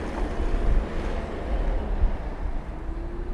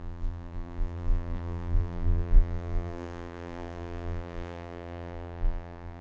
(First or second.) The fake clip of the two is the second